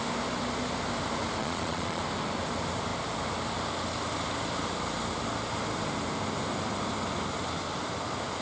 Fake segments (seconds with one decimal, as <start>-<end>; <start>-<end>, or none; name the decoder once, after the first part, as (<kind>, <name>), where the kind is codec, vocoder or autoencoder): 1.4-2.0 (vocoder, Vocos)